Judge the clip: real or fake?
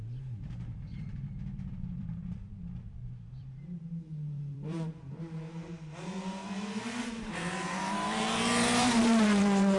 fake